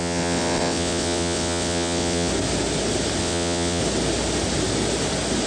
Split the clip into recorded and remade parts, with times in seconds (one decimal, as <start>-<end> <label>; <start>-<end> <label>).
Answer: 0.0-2.3 remade; 2.3-3.2 recorded; 3.2-3.8 remade; 3.8-5.5 recorded